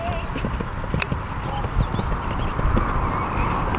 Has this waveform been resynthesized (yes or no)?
no